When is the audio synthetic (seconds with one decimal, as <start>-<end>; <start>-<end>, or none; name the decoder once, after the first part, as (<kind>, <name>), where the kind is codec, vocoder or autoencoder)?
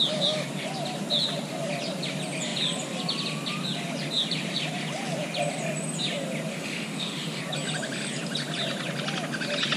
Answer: 6.5-7.4 (autoencoder, DAC-VAE)